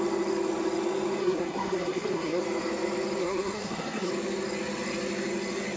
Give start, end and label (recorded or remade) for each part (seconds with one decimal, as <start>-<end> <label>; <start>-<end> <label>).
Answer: 0.0-1.2 recorded; 1.2-2.4 remade; 2.4-3.2 recorded; 3.2-4.1 remade; 4.1-5.8 recorded